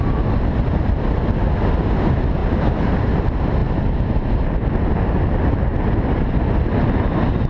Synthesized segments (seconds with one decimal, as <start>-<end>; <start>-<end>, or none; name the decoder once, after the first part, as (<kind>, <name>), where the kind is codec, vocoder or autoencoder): 2.4-3.1 (vocoder, BigVGAN v2)